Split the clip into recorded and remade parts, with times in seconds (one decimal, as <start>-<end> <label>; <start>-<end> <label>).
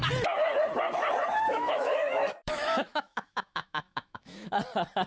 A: 0.0-1.5 recorded; 1.5-4.6 remade; 4.6-5.1 recorded